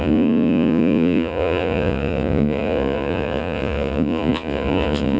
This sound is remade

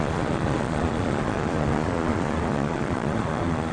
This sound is remade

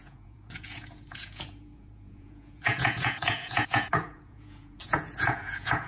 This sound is remade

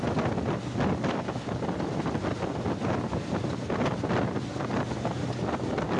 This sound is recorded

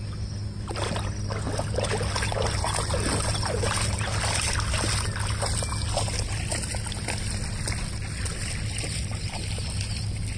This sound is recorded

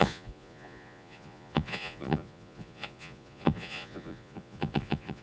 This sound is remade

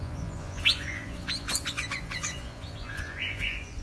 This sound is remade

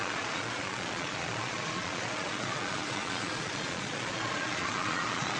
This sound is remade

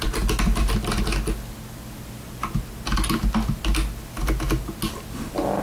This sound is recorded